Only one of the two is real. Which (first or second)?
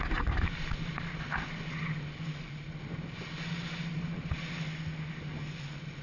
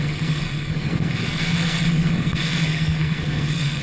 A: first